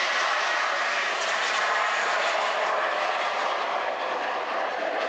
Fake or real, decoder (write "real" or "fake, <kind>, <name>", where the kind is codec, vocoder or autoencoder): real